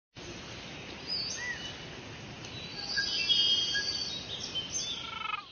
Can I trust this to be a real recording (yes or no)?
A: yes